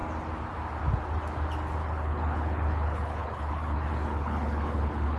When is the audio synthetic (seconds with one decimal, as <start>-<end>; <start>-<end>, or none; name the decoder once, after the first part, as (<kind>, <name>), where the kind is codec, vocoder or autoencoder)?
1.8-5.2 (codec, HILCodec)